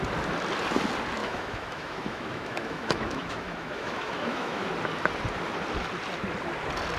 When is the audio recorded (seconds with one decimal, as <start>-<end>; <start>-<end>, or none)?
0.0-1.2; 4.7-7.0